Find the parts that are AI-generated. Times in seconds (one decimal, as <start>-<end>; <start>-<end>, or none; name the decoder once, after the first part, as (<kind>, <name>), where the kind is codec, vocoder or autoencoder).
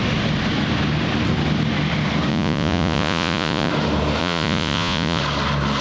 2.3-3.7 (vocoder, Vocos); 4.2-5.2